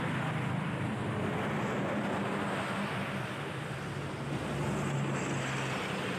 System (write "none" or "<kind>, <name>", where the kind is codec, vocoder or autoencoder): none